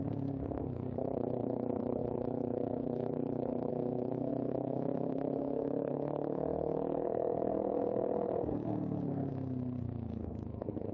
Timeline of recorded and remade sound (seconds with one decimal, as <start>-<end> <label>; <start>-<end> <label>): 0.0-10.9 remade